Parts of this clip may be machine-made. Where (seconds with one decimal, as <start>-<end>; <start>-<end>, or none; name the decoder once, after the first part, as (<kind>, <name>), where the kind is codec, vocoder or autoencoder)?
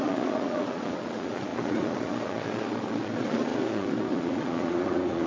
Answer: 0.0-5.3 (vocoder, Vocos)